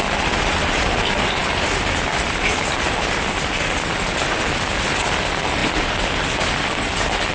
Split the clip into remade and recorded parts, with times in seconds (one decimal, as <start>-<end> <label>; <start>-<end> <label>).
0.0-7.3 recorded